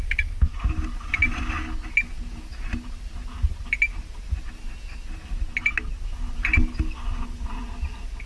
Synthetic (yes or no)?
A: no